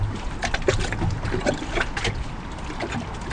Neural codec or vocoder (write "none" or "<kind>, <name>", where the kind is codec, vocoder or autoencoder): none